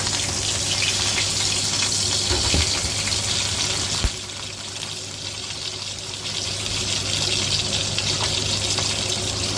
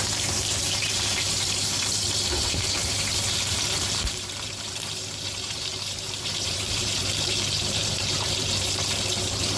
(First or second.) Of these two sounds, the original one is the first